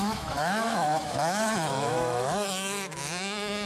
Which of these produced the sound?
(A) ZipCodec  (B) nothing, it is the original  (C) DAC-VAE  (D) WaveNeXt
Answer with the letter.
C